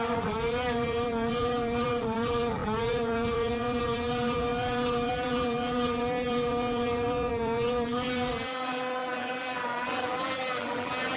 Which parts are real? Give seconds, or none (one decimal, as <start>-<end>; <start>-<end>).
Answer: none